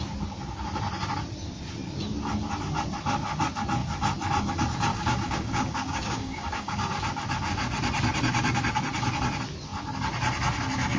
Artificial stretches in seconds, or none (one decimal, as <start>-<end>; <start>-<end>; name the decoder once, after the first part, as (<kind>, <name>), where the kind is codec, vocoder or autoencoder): 4.9-6.9 (codec, DAC)